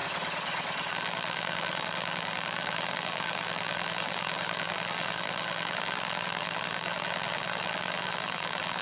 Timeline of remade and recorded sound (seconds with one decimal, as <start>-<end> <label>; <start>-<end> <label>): 0.0-0.9 recorded; 0.9-8.8 remade